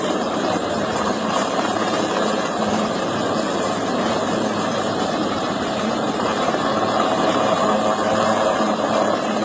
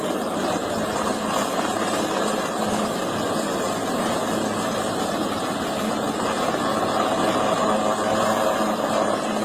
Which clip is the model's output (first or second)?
first